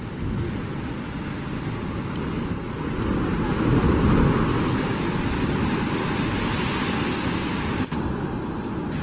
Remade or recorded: recorded